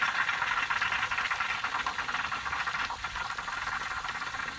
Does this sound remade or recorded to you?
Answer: recorded